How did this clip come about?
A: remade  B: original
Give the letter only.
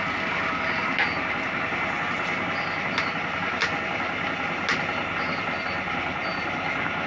B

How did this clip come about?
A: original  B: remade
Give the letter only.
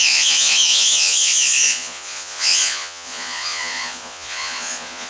B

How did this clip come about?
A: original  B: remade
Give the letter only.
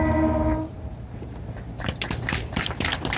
B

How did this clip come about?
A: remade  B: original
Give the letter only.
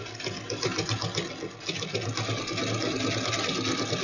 B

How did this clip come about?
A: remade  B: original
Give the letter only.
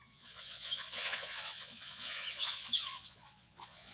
A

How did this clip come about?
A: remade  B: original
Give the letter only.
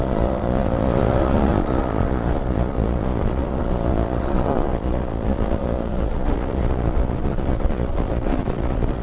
A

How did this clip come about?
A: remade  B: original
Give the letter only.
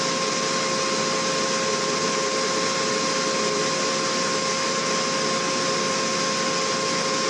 B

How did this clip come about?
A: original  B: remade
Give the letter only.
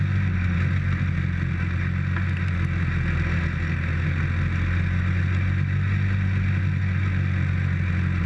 A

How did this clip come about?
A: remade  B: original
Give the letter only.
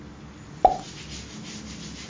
B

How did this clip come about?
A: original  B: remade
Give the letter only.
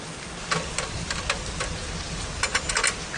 A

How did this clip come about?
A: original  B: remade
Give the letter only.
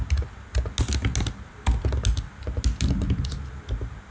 A